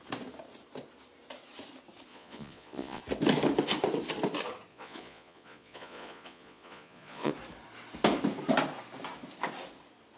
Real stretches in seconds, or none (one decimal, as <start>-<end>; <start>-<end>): 0.0-2.1; 3.0-4.7; 7.3-10.2